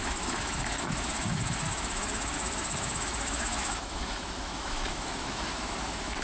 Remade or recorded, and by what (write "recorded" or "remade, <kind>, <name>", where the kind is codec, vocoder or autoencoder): remade, autoencoder, DAC-VAE